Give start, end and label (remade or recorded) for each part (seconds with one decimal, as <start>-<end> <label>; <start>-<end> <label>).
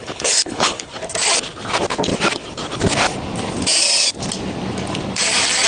0.0-0.9 remade; 0.9-5.7 recorded